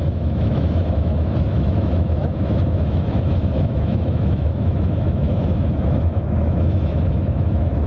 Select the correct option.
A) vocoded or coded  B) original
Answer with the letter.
A